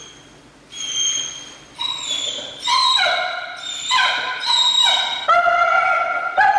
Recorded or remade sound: recorded